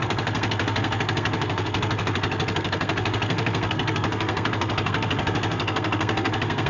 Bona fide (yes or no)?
no